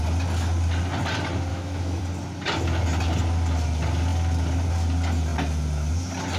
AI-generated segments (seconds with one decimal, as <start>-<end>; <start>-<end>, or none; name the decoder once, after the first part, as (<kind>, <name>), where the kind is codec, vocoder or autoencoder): 1.5-2.0 (autoencoder, DAC-VAE)

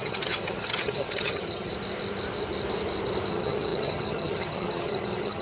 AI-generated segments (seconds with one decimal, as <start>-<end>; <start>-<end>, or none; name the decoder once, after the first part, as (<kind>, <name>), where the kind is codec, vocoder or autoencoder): 0.0-1.7 (vocoder, HiFi-GAN); 3.3-5.4

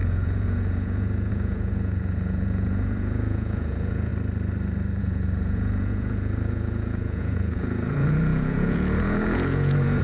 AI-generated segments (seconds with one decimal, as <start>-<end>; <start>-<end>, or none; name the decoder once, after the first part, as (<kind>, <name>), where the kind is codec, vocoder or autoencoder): 0.0-4.1 (vocoder, Vocos); 5.0-10.0

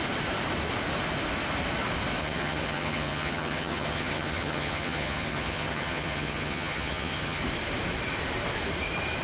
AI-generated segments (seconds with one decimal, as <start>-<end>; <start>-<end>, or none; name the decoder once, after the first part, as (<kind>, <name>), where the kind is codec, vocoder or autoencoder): 2.2-7.4 (vocoder, HiFi-GAN)

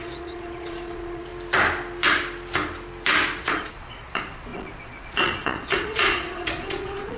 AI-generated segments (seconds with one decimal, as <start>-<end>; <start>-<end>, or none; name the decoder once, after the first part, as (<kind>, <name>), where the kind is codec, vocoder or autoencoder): 0.0-1.3 (vocoder, Vocos); 3.4-7.2

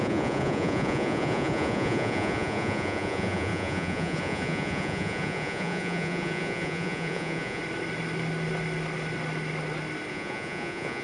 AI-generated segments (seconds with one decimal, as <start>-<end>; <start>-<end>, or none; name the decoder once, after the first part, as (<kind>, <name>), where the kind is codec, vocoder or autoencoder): 0.0-7.6 (vocoder, Vocos); 10.1-11.0

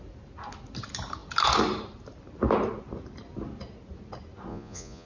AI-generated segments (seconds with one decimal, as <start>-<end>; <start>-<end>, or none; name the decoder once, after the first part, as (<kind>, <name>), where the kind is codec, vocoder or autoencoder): 4.5-5.1 (vocoder, Vocos)